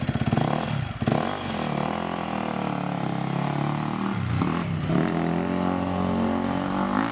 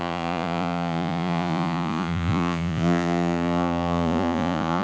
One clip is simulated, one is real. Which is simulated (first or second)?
second